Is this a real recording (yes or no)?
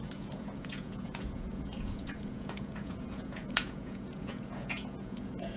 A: no